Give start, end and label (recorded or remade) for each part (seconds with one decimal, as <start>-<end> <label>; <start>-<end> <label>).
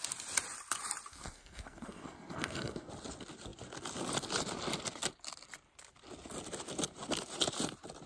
0.0-1.1 recorded; 1.1-2.9 remade; 2.9-8.1 recorded